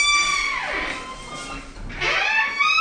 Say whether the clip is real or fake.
real